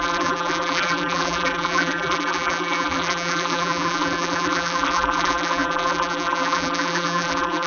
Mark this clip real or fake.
fake